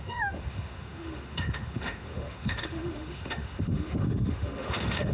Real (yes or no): no